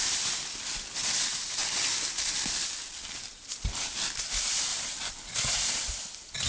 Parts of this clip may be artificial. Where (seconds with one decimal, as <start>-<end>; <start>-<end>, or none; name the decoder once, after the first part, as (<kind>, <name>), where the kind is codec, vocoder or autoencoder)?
none